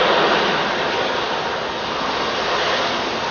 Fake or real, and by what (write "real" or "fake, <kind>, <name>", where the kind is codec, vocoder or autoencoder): real